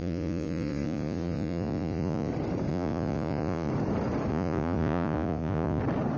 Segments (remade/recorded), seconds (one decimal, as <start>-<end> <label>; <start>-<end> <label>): 0.0-2.3 remade; 2.3-2.7 recorded; 2.7-3.7 remade; 3.7-4.3 recorded; 4.3-5.8 remade; 5.8-6.2 recorded